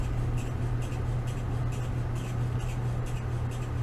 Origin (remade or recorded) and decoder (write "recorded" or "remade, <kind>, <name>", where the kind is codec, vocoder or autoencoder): recorded